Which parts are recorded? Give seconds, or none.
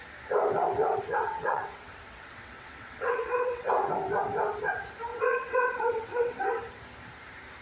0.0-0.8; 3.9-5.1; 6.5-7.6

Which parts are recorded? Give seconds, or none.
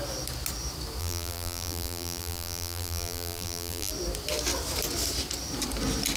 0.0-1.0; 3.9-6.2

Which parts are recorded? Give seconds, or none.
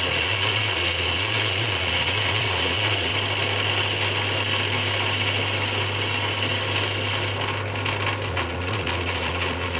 3.1-8.3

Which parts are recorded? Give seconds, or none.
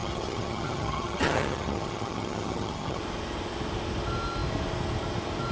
3.0-5.5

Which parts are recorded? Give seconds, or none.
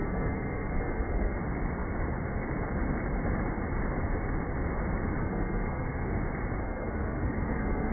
1.4-5.2; 6.1-6.6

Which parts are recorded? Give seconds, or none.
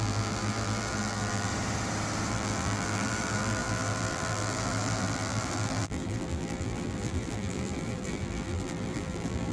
1.5-2.3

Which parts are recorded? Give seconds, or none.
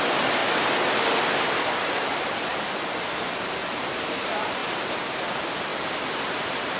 0.4-1.2; 2.5-3.9